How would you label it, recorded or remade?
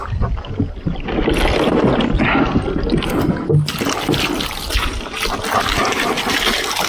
recorded